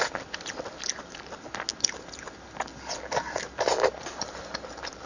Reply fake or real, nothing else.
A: real